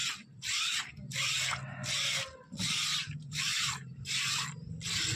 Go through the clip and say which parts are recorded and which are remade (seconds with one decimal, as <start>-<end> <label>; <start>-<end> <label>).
0.0-2.9 recorded; 2.9-4.2 remade; 4.2-5.1 recorded